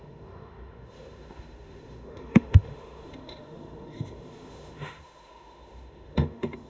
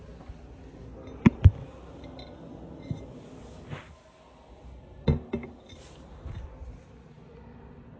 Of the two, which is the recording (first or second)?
second